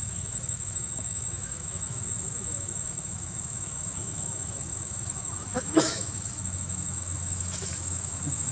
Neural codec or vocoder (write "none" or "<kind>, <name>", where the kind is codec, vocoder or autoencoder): autoencoder, DAC-VAE